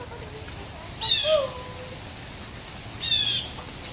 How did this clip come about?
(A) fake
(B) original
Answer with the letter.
B